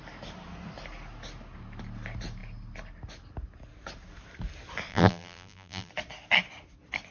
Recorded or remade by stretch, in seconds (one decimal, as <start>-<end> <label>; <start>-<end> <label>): 0.0-4.9 recorded; 4.9-5.9 remade; 5.9-7.1 recorded